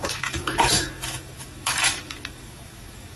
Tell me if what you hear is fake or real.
fake